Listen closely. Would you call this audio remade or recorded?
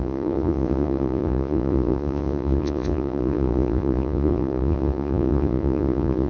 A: remade